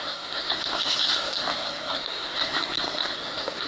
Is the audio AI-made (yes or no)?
yes